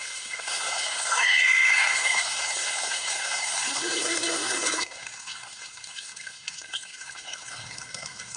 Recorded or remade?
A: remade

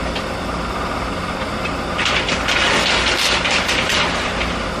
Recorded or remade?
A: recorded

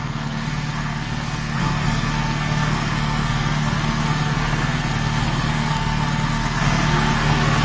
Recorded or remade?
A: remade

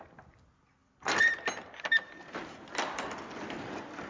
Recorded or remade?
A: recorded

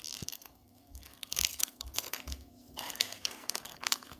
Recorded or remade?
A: remade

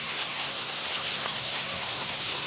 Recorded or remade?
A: remade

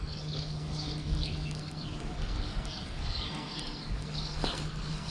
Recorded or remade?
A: remade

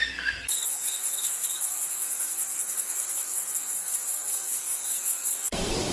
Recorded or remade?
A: remade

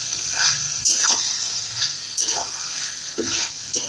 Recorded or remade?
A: remade